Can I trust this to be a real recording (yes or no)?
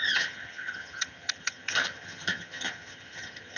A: no